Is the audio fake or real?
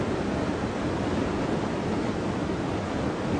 real